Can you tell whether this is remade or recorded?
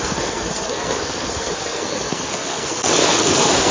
remade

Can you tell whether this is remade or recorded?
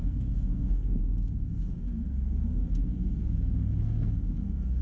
remade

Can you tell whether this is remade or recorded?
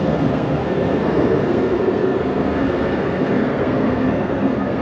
remade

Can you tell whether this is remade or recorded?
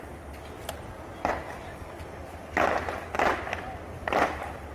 recorded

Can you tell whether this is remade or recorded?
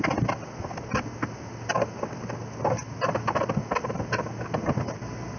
recorded